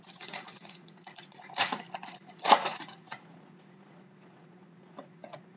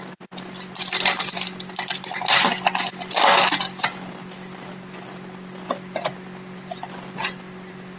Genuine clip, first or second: second